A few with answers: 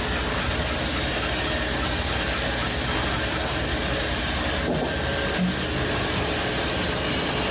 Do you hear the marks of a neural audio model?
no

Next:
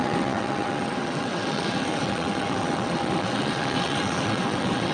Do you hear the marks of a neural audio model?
yes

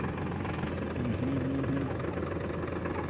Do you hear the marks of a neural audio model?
no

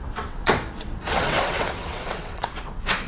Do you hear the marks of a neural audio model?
yes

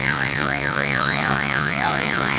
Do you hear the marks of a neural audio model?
yes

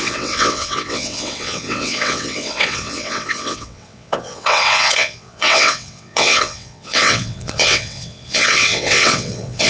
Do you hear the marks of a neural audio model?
yes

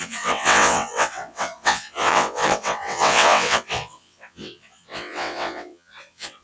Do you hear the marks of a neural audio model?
yes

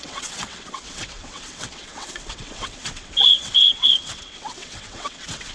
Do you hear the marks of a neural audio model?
yes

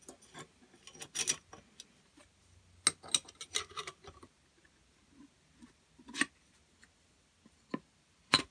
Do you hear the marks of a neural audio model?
no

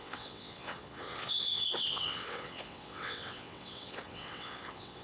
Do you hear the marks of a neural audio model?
yes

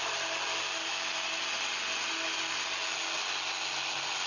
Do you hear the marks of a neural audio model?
no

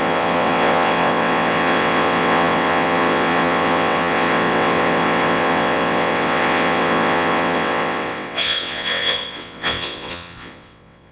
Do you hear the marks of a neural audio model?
yes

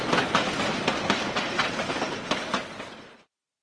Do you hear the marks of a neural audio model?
no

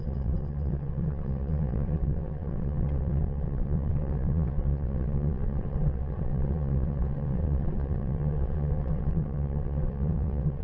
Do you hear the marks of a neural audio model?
yes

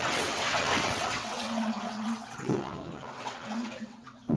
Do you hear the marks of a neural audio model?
yes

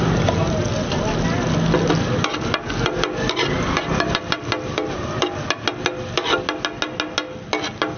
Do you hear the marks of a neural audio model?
no